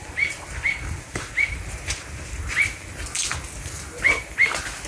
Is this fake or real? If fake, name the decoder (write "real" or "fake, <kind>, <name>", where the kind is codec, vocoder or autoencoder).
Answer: real